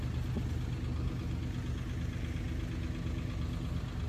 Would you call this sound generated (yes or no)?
no